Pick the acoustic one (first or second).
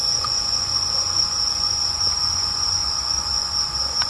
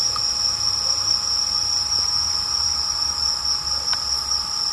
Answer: second